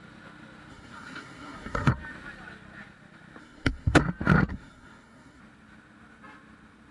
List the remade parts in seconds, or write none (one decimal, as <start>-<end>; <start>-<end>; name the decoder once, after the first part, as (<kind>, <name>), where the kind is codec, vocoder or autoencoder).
0.7-1.9 (codec, SNAC); 3.4-4.0; 4.5-5.4